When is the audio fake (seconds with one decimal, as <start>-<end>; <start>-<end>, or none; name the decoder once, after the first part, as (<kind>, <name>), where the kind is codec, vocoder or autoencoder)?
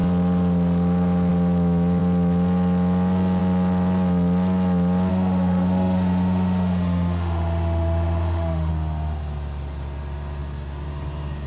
5.1-8.7 (autoencoder, DAC-VAE)